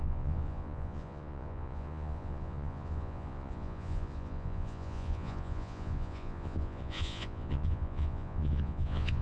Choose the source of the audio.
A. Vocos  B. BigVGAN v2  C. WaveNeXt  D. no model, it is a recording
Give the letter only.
A